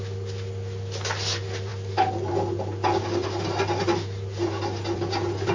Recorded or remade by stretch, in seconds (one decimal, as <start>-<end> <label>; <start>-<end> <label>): 0.0-5.5 recorded